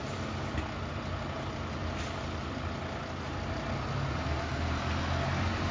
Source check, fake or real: real